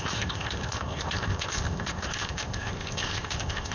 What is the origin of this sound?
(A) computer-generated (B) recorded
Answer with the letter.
A